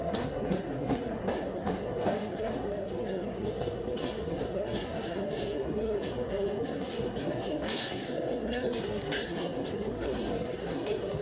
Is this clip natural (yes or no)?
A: no